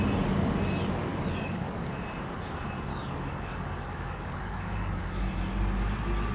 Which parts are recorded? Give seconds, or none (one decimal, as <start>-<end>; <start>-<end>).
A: 0.0-1.1; 1.9-2.9; 5.3-6.3